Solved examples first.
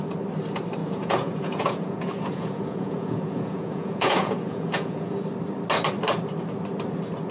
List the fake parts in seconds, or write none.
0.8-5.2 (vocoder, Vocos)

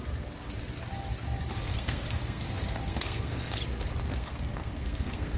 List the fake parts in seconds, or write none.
1.7-2.4 (codec, SNAC); 2.9-3.6; 4.1-5.4

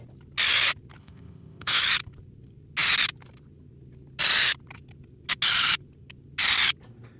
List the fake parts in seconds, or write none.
1.0-1.8 (codec, ZipCodec)

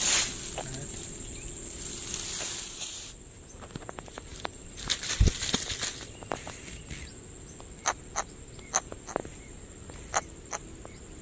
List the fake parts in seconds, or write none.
none

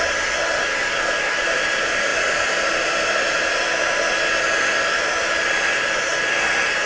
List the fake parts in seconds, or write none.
none

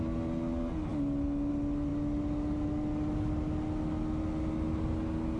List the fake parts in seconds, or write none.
none

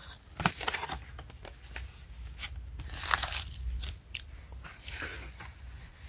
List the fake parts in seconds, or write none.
5.1-6.1 (vocoder, Vocos)